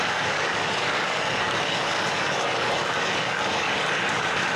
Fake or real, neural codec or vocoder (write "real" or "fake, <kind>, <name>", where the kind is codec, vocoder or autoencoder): fake, codec, DAC